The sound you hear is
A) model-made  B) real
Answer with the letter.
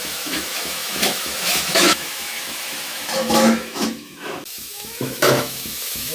A